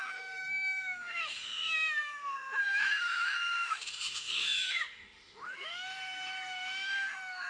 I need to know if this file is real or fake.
fake